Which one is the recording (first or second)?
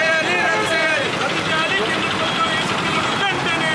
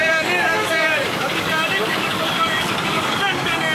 first